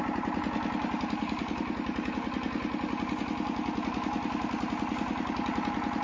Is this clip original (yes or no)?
yes